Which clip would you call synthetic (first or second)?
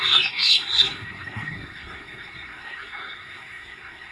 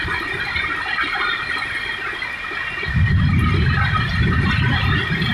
first